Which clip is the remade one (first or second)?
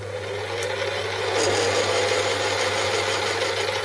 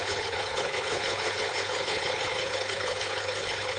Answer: second